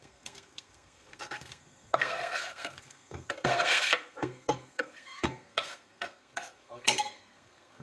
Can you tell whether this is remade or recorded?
remade